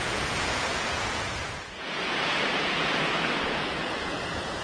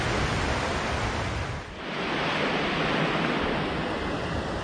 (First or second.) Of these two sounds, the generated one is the first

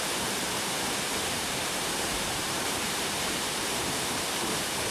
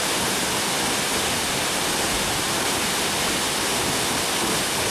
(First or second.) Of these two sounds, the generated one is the first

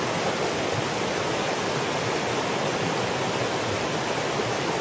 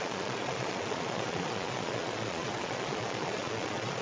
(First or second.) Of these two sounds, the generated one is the second